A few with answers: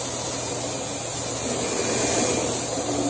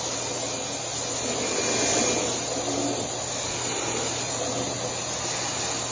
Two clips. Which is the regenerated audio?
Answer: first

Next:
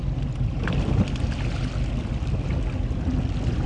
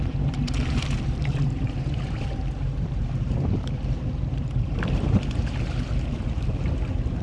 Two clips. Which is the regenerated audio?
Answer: second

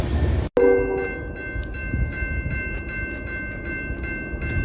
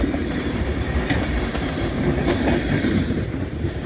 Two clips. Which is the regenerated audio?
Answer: second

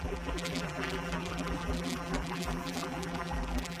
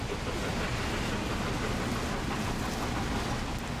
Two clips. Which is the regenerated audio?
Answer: first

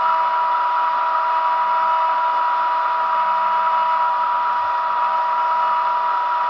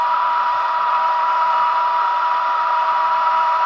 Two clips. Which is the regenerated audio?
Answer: second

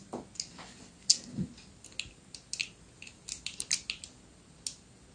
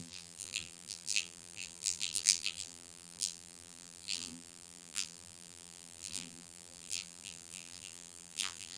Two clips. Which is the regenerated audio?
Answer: second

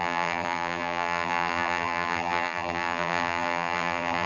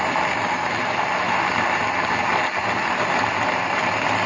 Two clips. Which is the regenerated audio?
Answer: first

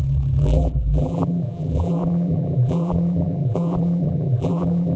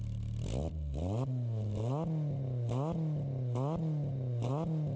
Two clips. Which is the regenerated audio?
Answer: first